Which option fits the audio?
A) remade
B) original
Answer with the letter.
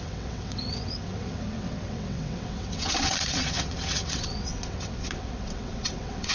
A